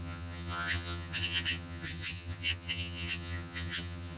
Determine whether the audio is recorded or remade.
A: remade